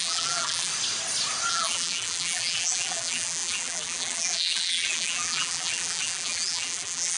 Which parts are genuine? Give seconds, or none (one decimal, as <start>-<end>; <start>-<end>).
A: 0.7-1.5

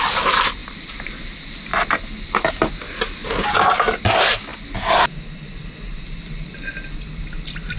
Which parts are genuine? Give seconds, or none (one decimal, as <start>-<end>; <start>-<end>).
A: 0.0-0.6; 1.2-3.2; 4.0-7.8

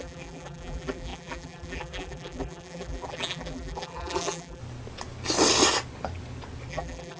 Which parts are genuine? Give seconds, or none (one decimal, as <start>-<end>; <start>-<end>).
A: 4.6-6.7

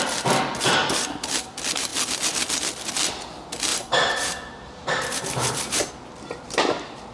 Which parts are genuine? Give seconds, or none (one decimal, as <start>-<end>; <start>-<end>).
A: 0.0-3.7; 5.9-7.1

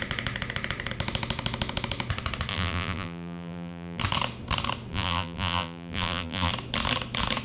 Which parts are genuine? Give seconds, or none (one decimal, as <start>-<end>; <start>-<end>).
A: 0.0-2.5; 4.0-4.9; 6.5-7.4

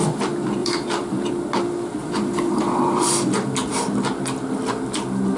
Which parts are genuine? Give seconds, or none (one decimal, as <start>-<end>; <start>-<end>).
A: 0.0-0.6; 1.3-2.0; 3.7-5.4

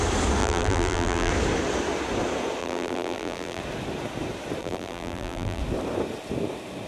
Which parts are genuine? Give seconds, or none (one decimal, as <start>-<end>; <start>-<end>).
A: 0.0-0.4; 1.3-2.6; 3.6-4.6; 5.6-6.9